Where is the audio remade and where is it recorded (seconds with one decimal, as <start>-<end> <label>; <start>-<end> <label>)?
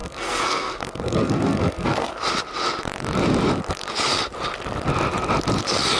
0.0-2.2 remade; 2.2-6.0 recorded